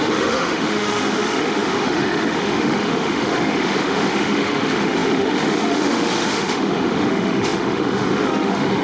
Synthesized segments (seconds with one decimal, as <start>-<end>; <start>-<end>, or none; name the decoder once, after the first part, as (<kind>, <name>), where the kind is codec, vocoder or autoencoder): 0.0-8.8 (autoencoder, DAC-VAE)